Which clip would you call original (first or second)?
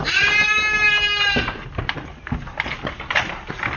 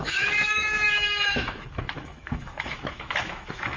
first